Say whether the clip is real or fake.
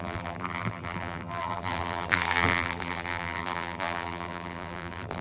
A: fake